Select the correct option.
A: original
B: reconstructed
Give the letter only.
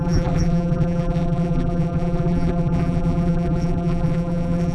B